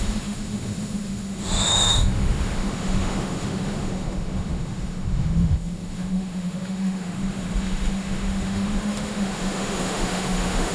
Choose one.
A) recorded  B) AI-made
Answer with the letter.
B